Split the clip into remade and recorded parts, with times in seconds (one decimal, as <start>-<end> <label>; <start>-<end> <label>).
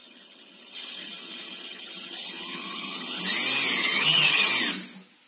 0.0-3.2 remade; 3.2-3.8 recorded; 3.8-4.5 remade; 4.5-5.3 recorded